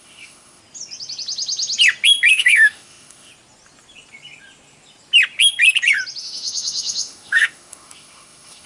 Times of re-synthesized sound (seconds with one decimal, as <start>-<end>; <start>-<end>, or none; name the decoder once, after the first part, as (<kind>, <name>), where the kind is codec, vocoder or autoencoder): 0.0-0.6 (autoencoder, DAC-VAE); 2.3-3.3; 6.2-8.7